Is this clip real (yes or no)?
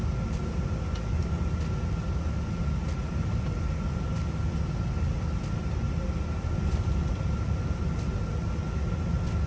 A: yes